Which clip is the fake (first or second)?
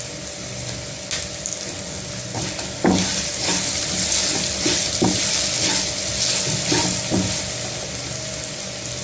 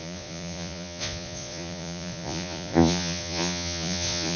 second